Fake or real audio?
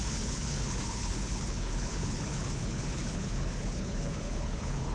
fake